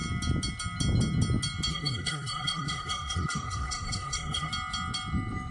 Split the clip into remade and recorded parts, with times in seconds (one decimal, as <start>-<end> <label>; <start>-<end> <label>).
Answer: 0.0-1.7 recorded; 1.7-4.5 remade; 4.5-5.5 recorded